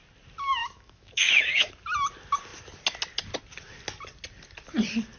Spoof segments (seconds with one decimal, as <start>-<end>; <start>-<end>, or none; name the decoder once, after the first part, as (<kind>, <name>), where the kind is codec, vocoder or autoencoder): 0.6-1.7 (autoencoder, DAC-VAE)